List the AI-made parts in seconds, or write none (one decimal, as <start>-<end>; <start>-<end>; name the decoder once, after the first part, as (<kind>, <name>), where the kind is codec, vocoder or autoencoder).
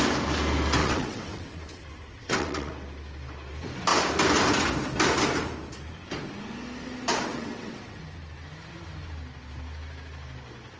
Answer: 0.8-2.7 (vocoder, WaveNeXt); 7.3-8.0